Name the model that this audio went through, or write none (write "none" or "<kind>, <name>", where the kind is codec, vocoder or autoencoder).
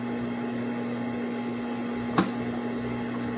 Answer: none